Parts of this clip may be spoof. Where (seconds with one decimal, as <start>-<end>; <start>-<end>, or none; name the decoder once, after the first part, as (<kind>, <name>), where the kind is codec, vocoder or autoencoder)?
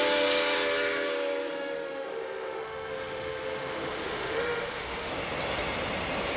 1.5-5.1 (autoencoder, DAC-VAE)